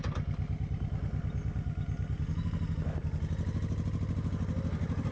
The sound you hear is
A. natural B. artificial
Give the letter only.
A